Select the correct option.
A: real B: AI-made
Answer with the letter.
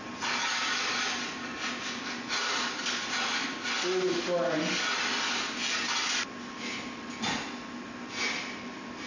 A